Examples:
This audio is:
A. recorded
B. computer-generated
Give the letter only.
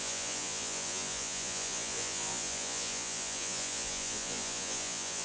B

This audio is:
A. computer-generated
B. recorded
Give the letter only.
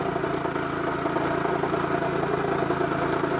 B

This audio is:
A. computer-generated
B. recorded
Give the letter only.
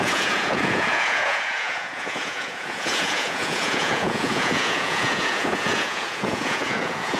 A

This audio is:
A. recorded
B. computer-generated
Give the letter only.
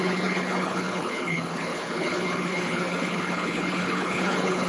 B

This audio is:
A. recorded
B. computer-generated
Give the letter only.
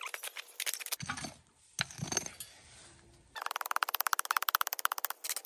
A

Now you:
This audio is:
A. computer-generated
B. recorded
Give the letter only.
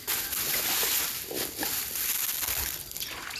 B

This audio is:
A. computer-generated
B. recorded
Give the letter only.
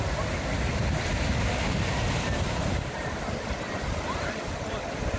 B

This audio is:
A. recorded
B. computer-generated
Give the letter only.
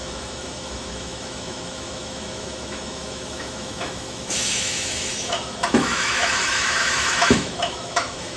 B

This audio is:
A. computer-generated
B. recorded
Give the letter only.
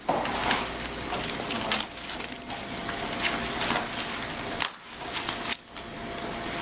B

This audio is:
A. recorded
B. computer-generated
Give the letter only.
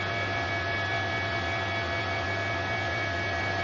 A